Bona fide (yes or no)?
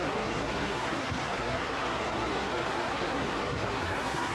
no